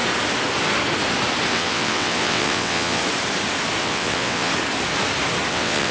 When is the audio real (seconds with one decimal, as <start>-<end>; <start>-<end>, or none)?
0.0-1.5; 3.0-3.8; 4.5-5.5